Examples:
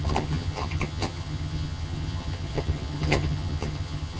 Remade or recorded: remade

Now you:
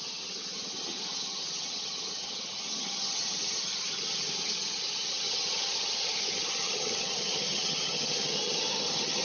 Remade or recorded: remade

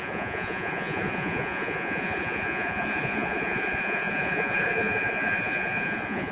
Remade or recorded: remade